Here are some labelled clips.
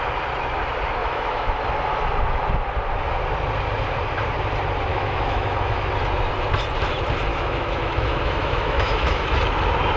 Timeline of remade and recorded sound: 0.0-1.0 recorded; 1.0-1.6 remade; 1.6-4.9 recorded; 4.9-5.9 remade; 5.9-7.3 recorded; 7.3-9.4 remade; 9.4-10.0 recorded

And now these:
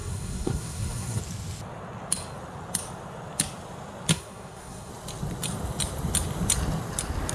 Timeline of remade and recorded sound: 0.0-1.2 remade; 1.2-4.1 recorded; 4.1-4.9 remade; 4.9-7.3 recorded

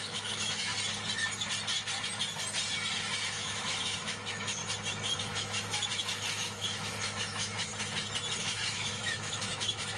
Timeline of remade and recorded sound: 0.0-0.7 remade; 0.7-3.3 recorded; 3.3-4.6 remade; 4.6-5.2 recorded; 5.2-7.7 remade; 7.7-8.4 recorded; 8.4-10.0 remade

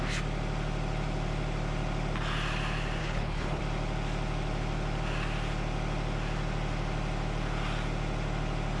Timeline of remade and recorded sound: 0.0-3.0 recorded; 3.0-3.6 remade; 3.6-8.8 recorded

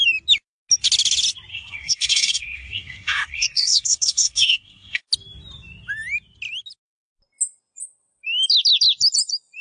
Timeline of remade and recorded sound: 0.0-1.5 recorded; 1.5-5.0 remade; 5.0-9.6 recorded

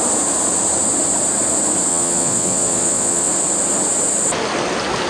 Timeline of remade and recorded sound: 0.0-1.9 recorded; 1.9-3.3 remade; 3.3-5.1 recorded